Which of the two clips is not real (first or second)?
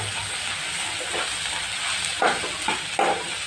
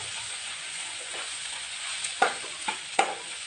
second